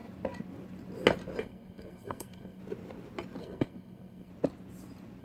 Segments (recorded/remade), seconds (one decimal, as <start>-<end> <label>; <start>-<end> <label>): 0.0-1.4 recorded; 1.4-2.6 remade; 2.6-3.4 recorded; 3.4-4.3 remade; 4.3-5.2 recorded